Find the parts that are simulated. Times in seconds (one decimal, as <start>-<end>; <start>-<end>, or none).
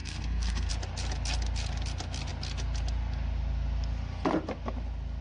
0.0-0.7